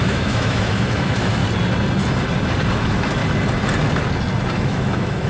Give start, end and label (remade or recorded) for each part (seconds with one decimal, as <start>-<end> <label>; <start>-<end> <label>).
0.0-1.4 remade; 1.4-2.7 recorded; 2.7-3.2 remade; 3.2-4.6 recorded; 4.6-5.3 remade